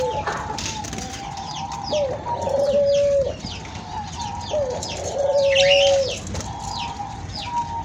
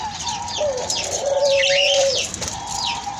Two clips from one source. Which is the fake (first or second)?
second